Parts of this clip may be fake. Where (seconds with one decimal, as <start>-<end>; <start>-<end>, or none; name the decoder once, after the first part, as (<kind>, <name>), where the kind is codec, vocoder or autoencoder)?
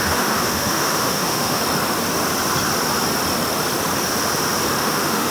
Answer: 0.0-1.6 (autoencoder, DAC-VAE); 4.8-5.3